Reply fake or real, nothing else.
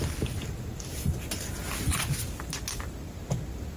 real